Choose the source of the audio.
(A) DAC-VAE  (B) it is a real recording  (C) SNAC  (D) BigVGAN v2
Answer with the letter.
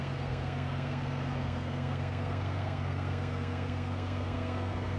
C